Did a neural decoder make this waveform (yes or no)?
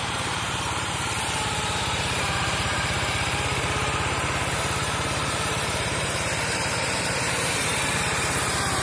yes